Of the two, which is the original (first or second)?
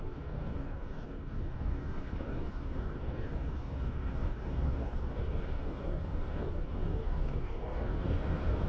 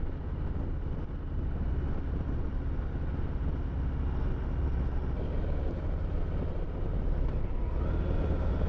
second